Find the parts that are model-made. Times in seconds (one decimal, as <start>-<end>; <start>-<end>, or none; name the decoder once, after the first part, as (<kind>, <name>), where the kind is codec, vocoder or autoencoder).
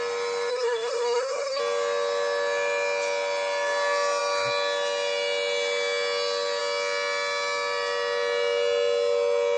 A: 0.5-1.6 (codec, SNAC)